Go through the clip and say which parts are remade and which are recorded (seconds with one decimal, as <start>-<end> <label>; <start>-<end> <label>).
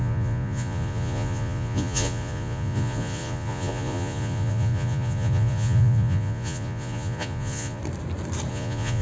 0.0-7.8 remade; 7.8-8.5 recorded; 8.5-9.0 remade